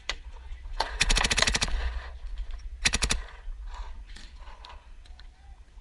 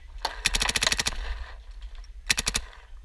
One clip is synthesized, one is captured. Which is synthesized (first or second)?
first